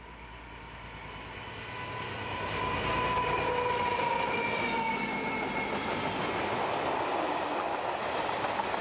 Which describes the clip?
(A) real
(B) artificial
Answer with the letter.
A